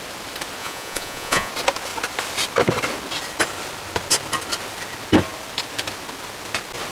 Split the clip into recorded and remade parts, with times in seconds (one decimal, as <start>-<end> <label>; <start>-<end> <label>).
0.0-0.6 recorded; 0.6-1.5 remade; 1.5-6.9 recorded